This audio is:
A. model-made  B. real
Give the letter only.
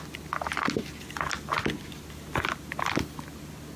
B